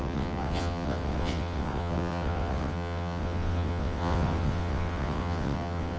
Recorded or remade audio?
remade